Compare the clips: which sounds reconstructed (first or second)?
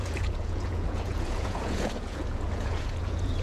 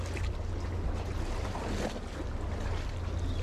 first